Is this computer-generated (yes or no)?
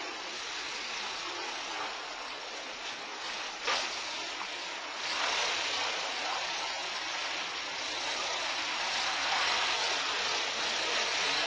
no